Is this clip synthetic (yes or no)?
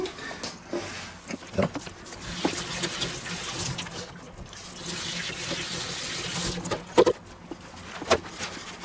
no